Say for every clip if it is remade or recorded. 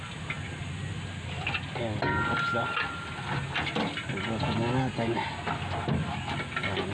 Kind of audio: recorded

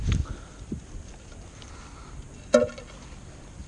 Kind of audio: recorded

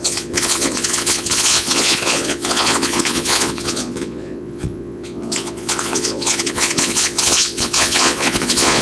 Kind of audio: remade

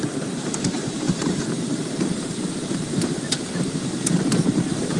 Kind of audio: remade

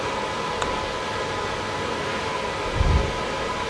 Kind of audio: recorded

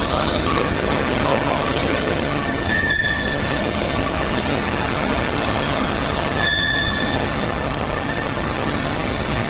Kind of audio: remade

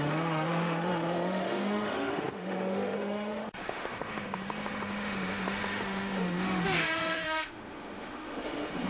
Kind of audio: remade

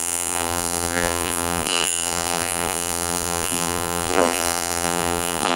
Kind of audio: remade